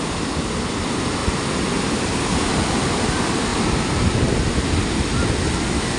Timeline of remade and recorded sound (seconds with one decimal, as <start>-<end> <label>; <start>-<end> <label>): 0.0-3.5 recorded; 3.5-4.1 remade; 4.1-6.0 recorded

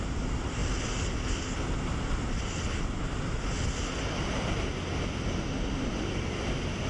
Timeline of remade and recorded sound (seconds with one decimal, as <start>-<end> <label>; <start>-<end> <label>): 0.0-6.9 recorded

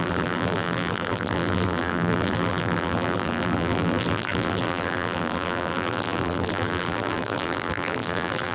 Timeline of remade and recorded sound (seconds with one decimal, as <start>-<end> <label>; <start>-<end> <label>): 0.0-8.5 remade

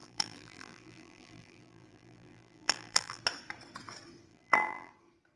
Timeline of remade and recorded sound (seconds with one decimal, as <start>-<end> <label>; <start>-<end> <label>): 0.0-3.2 remade; 3.2-4.3 recorded; 4.3-4.9 remade; 4.9-5.4 recorded

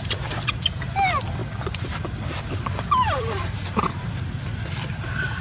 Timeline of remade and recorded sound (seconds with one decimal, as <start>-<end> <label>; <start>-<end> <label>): 0.0-1.4 recorded; 1.4-4.2 remade; 4.2-5.4 recorded

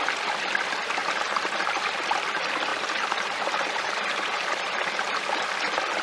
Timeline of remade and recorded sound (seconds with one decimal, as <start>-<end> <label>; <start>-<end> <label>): 0.0-2.7 recorded; 2.7-5.5 remade; 5.5-6.0 recorded

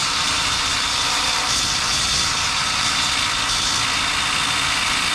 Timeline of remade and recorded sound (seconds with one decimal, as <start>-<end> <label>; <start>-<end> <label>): 0.0-3.1 remade; 3.1-5.1 recorded

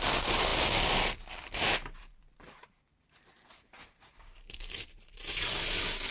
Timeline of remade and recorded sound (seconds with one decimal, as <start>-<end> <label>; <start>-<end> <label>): 0.0-1.8 recorded; 1.8-5.5 remade; 5.5-6.1 recorded